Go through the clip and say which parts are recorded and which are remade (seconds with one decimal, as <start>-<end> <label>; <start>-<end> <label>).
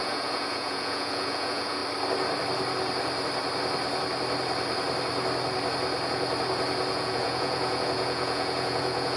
0.0-1.8 remade; 1.8-6.9 recorded; 6.9-9.2 remade